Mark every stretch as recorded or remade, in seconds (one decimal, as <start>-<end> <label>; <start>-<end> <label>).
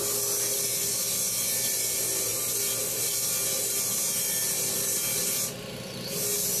0.0-6.6 recorded